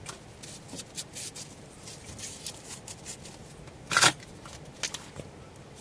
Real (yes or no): yes